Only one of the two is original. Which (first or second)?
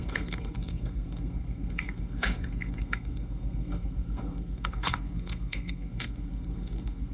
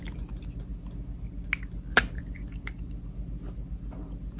second